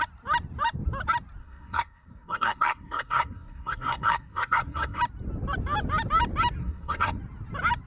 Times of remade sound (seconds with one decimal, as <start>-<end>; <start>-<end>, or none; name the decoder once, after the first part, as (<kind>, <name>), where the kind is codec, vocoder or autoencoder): 1.4-5.0 (codec, SNAC); 6.6-7.2